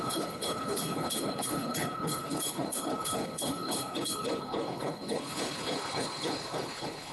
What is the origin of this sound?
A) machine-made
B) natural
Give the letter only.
A